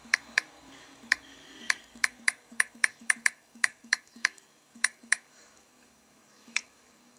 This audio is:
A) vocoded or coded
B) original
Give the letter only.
A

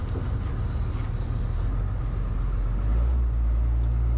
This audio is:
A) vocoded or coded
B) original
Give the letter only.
B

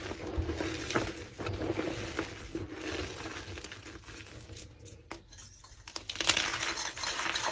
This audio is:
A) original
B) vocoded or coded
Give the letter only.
A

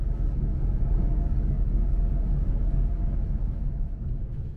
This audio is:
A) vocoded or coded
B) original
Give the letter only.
A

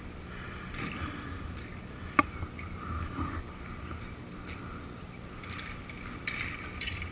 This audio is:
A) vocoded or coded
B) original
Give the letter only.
B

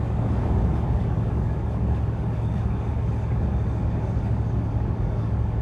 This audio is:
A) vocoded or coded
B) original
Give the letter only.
A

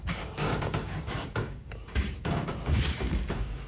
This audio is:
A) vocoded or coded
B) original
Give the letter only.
A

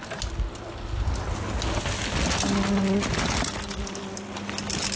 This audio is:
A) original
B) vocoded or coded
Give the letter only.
A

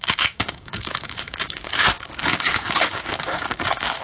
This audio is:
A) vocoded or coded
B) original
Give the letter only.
A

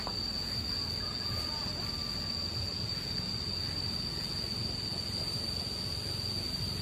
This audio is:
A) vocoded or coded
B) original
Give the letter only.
B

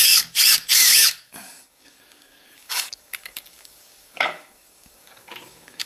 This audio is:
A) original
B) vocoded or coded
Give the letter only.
B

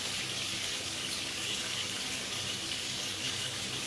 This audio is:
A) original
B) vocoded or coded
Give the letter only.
B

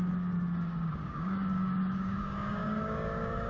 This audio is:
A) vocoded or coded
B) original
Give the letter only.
A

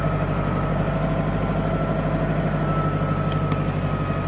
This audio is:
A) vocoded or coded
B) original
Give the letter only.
B